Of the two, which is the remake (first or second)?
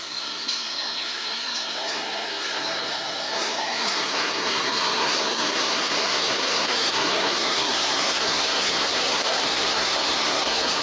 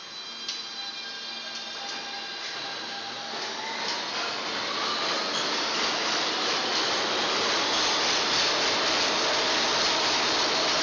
first